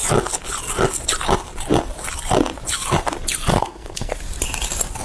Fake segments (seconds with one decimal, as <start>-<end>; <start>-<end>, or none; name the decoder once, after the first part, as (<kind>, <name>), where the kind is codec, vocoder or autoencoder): 3.5-4.1 (codec, SNAC)